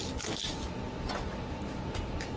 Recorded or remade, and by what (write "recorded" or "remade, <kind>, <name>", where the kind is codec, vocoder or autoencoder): recorded